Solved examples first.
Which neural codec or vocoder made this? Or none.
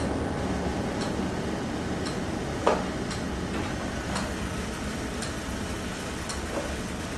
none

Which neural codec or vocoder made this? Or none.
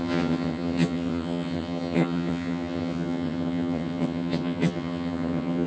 vocoder, HiFi-GAN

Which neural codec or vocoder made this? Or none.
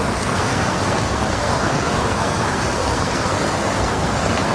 codec, SNAC